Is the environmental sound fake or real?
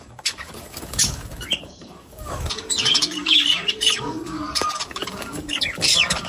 fake